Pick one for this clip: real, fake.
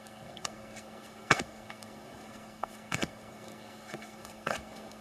fake